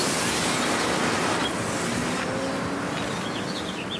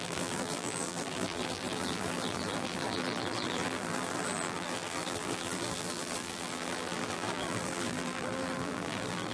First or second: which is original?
first